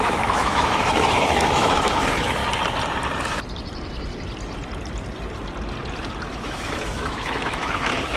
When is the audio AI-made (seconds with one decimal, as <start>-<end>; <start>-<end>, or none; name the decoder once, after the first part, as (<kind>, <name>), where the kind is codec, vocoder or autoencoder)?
0.0-2.4 (autoencoder, DAC-VAE); 6.3-8.2